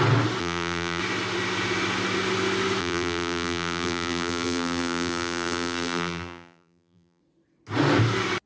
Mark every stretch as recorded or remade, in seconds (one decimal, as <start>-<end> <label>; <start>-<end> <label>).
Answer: 0.0-0.4 recorded; 0.4-1.0 remade; 1.0-2.8 recorded; 2.8-7.2 remade; 7.2-8.5 recorded